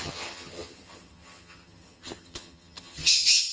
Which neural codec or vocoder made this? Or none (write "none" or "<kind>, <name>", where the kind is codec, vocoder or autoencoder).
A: vocoder, HiFi-GAN